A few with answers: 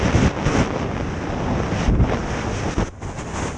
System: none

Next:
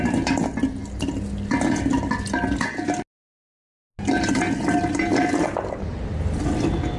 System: none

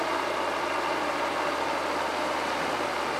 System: none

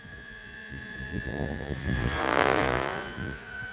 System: vocoder, Vocos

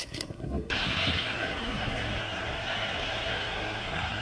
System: codec, SNAC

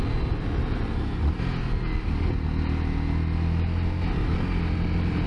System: none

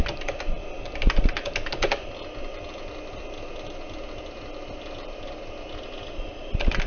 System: none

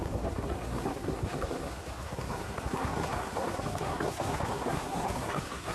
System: codec, SNAC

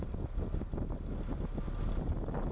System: none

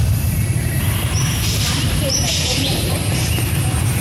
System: vocoder, BigVGAN v2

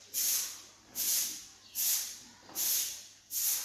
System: none